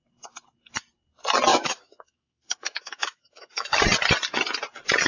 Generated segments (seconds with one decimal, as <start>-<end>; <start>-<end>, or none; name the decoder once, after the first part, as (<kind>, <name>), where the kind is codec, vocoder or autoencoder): 1.5-3.8 (autoencoder, DAC-VAE)